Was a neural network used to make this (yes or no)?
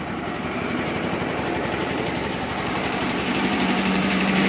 yes